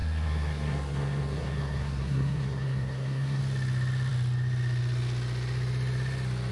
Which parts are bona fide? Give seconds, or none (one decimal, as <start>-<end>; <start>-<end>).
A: 3.4-6.5